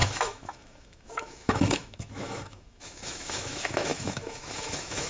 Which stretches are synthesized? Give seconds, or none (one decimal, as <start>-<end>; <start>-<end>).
0.0-5.1